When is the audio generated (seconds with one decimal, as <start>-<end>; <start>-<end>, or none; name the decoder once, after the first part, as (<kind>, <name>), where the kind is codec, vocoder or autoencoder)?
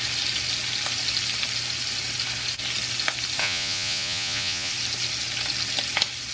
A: 3.4-4.7 (vocoder, Vocos)